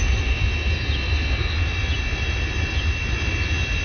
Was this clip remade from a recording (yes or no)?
no